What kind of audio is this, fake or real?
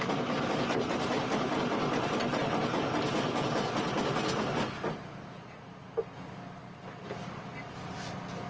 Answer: real